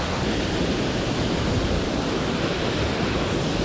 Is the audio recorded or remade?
recorded